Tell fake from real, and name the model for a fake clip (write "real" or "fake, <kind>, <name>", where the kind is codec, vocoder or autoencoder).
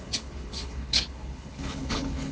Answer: fake, codec, HILCodec